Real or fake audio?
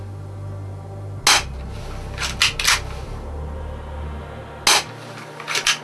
real